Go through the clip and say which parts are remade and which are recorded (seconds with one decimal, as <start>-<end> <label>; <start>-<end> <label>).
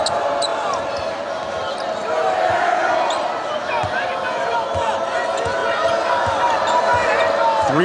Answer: 0.0-7.8 recorded